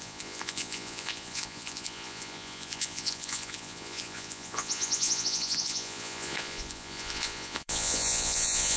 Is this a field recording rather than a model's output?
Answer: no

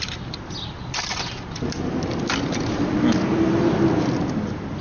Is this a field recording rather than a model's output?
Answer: no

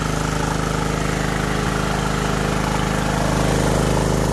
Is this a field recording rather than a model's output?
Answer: yes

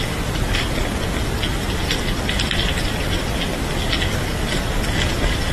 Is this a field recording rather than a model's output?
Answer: yes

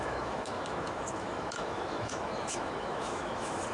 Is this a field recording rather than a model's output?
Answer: no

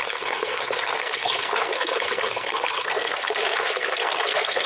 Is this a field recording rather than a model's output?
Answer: no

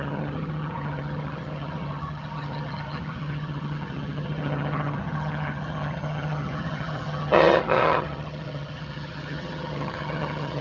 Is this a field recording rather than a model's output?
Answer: no